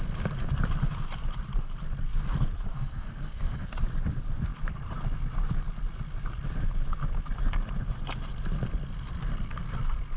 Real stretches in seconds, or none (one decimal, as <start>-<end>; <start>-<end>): 0.0-2.7; 3.7-10.2